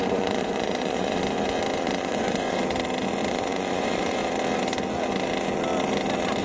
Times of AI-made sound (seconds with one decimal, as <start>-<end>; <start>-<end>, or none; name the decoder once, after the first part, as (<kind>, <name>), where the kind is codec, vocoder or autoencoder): 0.0-1.2 (vocoder, Vocos); 1.8-2.6; 3.3-4.2